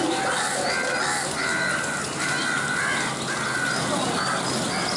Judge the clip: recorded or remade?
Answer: recorded